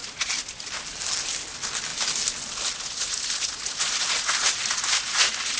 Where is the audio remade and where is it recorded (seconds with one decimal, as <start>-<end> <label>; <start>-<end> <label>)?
0.0-5.6 recorded